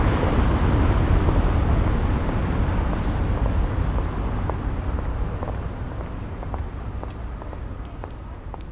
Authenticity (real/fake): real